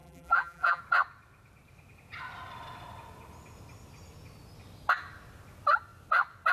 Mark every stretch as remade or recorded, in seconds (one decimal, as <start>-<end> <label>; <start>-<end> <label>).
0.0-0.8 remade; 0.8-6.5 recorded